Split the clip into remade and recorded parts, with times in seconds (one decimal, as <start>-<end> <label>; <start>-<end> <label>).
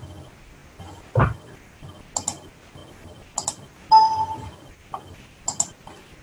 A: 0.0-6.2 recorded